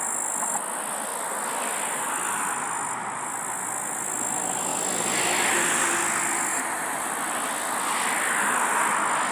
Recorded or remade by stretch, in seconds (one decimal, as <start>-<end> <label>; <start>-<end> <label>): 0.0-6.5 recorded; 6.5-7.1 remade; 7.1-9.3 recorded